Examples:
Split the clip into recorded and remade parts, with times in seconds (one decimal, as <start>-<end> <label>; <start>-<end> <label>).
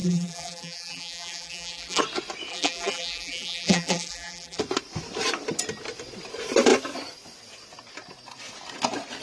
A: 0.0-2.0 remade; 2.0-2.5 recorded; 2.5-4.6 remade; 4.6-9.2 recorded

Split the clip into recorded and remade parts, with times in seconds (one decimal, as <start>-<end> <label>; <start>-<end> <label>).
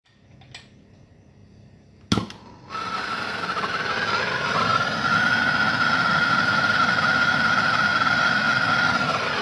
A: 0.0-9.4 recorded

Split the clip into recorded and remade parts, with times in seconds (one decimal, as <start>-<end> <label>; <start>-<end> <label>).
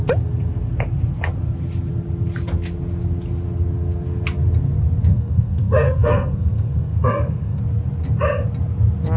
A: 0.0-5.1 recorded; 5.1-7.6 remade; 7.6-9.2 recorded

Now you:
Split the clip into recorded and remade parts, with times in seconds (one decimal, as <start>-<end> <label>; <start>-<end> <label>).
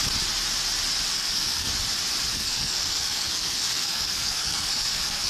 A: 0.0-1.1 recorded; 1.1-1.7 remade; 1.7-2.3 recorded; 2.3-5.3 remade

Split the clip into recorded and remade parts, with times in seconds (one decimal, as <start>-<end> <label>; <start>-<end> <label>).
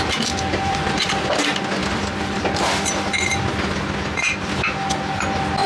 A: 0.0-0.5 recorded; 0.5-1.3 remade; 1.3-5.7 recorded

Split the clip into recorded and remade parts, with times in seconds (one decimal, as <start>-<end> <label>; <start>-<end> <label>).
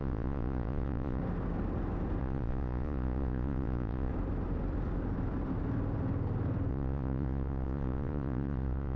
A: 0.0-1.2 remade; 1.2-2.2 recorded; 2.2-4.1 remade; 4.1-6.7 recorded; 6.7-9.0 remade